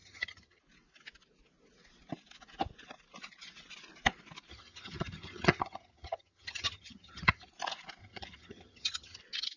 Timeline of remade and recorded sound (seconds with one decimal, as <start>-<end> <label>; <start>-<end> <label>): 0.0-0.6 remade; 0.6-4.5 recorded; 4.5-7.5 remade; 7.5-8.0 recorded; 8.0-9.2 remade; 9.2-9.6 recorded